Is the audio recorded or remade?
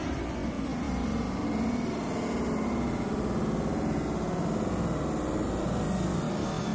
recorded